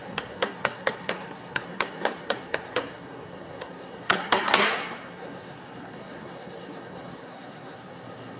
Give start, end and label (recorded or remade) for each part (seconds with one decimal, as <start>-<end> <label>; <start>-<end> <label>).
0.0-8.4 remade